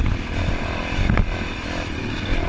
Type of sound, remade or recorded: recorded